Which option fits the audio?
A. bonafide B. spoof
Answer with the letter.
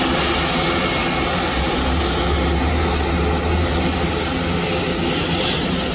A